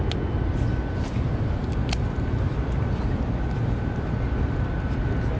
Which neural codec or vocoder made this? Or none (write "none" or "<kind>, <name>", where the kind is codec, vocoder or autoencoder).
none